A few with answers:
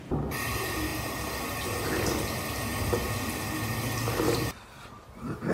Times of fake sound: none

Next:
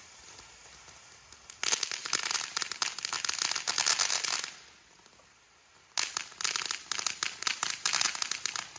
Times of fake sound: 2.0-2.7 (vocoder, BigVGAN v2)

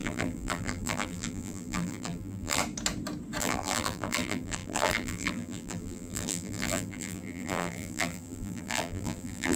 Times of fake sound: 0.0-2.6 (vocoder, BigVGAN v2); 3.4-9.6

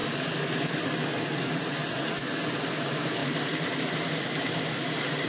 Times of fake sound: none

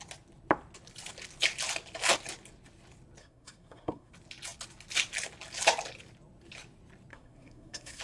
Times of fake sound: 3.2-4.1 (codec, SNAC); 7.1-8.0